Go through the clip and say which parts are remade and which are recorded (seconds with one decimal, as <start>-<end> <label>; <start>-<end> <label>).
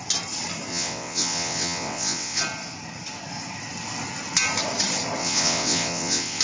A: 0.0-0.7 recorded; 0.7-2.4 remade; 2.4-5.2 recorded; 5.2-6.4 remade